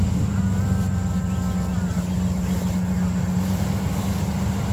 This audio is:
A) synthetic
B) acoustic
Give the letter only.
B